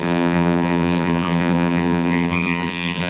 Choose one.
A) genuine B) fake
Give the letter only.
B